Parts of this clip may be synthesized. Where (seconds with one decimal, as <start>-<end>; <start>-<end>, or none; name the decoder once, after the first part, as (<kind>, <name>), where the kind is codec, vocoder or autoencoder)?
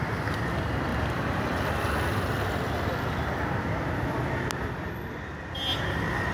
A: none